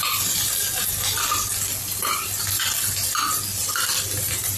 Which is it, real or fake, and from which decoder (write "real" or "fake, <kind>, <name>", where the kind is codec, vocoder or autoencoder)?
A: real